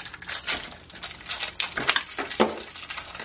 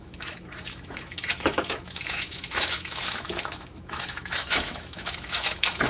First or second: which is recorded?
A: first